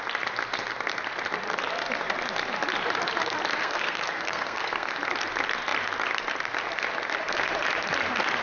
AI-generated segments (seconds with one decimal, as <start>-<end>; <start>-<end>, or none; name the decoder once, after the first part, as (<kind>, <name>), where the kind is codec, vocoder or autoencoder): 3.6-4.9 (codec, SNAC)